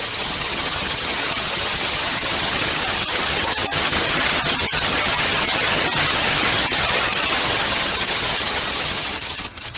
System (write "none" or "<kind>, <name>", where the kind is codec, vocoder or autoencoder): vocoder, HiFi-GAN